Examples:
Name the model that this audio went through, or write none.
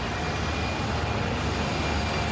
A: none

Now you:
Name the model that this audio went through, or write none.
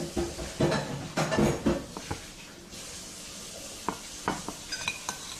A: none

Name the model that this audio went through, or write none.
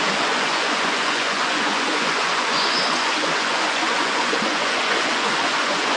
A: vocoder, Vocos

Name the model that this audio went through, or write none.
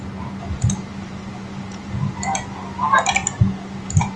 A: none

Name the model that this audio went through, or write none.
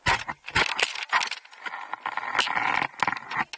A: none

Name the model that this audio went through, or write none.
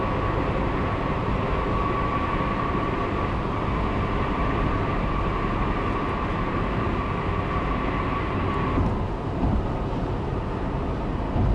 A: none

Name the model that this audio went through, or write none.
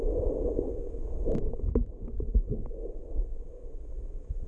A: autoencoder, DAC-VAE